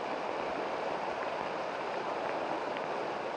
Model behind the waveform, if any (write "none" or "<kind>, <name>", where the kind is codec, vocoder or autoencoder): none